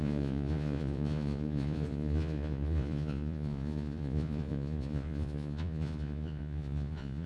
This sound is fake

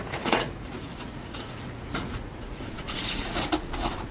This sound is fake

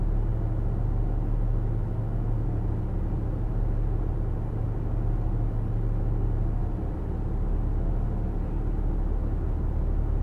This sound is real